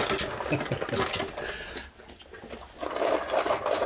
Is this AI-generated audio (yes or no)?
no